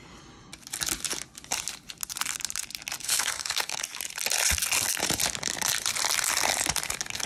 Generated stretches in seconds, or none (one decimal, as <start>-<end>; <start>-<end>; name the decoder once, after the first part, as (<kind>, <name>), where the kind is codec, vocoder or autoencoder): 3.0-3.8 (codec, SNAC)